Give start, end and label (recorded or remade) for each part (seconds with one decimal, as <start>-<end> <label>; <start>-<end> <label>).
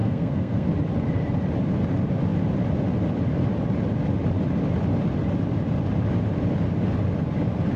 0.0-0.7 remade; 0.7-7.8 recorded